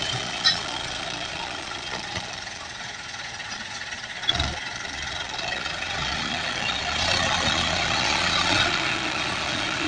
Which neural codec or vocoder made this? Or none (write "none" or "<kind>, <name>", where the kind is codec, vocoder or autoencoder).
vocoder, Vocos